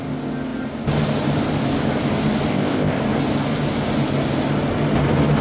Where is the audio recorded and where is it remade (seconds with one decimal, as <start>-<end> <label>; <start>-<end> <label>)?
0.0-2.5 recorded; 2.5-3.0 remade; 3.0-5.4 recorded